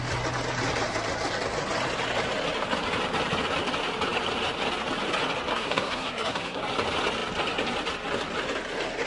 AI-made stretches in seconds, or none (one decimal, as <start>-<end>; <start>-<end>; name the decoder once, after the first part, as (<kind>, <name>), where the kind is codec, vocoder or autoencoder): 5.5-6.6 (codec, SNAC)

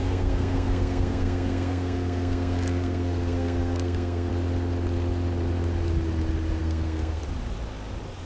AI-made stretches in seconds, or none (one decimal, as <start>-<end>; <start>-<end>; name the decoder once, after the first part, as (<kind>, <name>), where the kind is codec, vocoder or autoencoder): 0.0-4.3 (codec, SNAC); 6.6-7.2

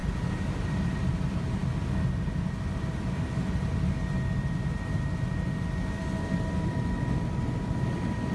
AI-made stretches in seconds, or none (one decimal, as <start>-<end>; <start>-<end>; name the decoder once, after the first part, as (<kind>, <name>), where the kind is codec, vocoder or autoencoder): none

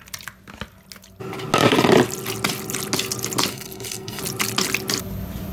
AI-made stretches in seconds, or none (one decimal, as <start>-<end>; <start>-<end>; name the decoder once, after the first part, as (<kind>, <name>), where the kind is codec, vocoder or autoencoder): 3.5-4.2 (codec, SNAC)

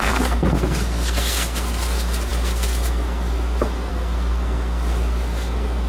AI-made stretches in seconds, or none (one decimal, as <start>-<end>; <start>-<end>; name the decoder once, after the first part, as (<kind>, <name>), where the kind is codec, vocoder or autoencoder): 0.0-5.9 (codec, SNAC)